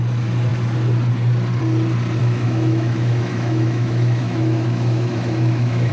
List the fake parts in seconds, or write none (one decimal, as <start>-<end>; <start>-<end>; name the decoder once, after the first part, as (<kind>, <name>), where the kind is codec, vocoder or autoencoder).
2.2-5.9 (autoencoder, DAC-VAE)